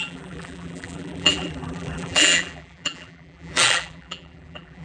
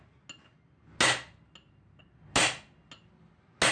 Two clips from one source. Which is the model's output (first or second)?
first